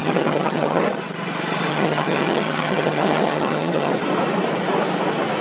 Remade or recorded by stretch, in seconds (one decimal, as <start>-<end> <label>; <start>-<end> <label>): 0.0-0.8 remade; 0.8-1.7 recorded; 1.7-3.9 remade; 3.9-5.4 recorded

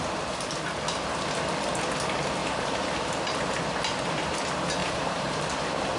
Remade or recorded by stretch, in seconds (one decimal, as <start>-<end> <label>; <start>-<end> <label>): 0.0-2.4 recorded; 2.4-3.5 remade; 3.5-4.8 recorded; 4.8-5.5 remade; 5.5-6.0 recorded